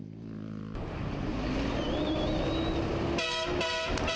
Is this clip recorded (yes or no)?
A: yes